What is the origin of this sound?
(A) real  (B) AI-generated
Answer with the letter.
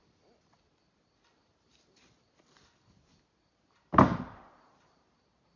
A